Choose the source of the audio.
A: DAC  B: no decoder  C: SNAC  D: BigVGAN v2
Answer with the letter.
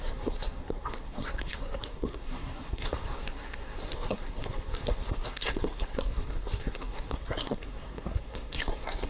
C